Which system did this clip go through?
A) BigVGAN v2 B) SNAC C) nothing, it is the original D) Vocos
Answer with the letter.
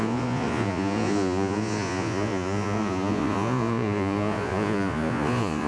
D